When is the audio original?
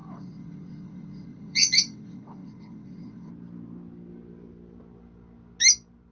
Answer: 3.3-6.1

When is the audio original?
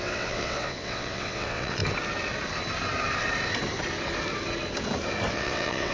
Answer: 1.8-5.3